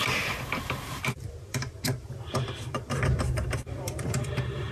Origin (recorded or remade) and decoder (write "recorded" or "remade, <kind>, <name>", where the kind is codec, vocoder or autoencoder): remade, vocoder, BigVGAN v2